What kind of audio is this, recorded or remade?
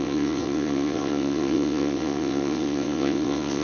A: remade